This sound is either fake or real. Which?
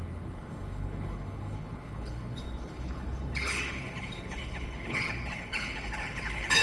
fake